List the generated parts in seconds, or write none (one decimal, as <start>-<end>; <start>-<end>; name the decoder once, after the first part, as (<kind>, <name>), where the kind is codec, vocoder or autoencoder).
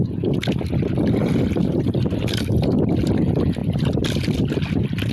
none